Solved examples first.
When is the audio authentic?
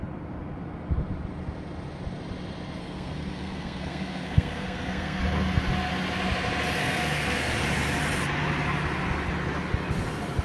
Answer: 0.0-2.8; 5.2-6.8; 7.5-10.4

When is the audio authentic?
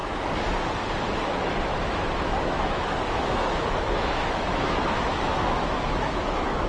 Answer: 0.0-1.2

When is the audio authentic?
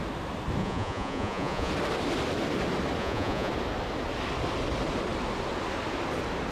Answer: 0.0-0.6; 1.7-3.0; 3.5-6.5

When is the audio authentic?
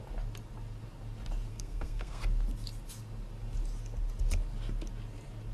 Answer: 0.0-1.5; 2.2-5.5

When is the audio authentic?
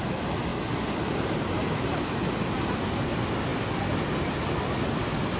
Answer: 0.0-5.4